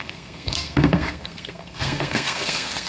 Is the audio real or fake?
fake